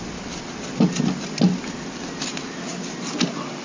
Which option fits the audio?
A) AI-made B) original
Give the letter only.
B